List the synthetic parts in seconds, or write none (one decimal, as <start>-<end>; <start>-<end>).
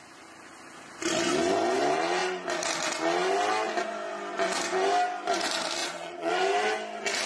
5.8-6.3